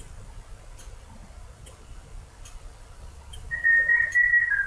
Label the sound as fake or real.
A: real